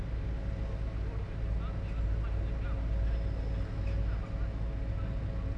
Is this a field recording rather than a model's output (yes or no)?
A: yes